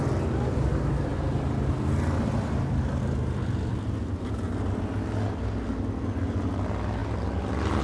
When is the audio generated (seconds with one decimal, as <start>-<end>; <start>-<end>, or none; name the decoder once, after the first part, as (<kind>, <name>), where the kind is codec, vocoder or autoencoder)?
1.1-3.8 (vocoder, BigVGAN v2); 7.0-7.8

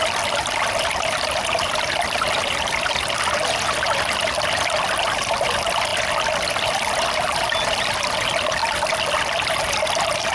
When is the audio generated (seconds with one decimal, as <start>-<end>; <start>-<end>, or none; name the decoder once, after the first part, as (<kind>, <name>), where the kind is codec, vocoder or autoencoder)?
none

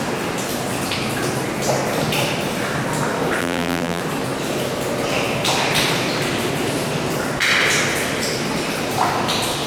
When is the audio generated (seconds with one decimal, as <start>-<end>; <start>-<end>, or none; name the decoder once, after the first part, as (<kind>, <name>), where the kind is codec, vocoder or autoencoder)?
3.4-4.0 (vocoder, BigVGAN v2)